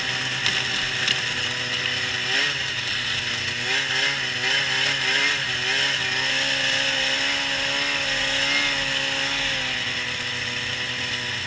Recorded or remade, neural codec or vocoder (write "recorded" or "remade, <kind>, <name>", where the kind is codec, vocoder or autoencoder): recorded